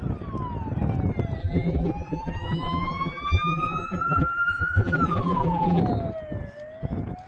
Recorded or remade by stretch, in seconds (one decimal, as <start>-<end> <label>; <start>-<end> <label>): 0.0-1.4 recorded; 1.4-5.8 remade; 5.8-7.3 recorded